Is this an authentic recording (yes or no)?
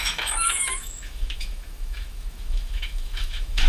no